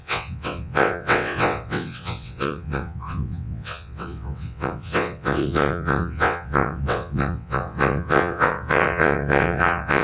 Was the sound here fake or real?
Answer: fake